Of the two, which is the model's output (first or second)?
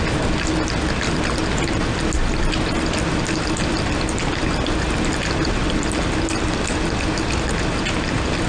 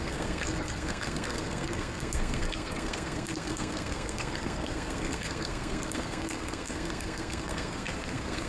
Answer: second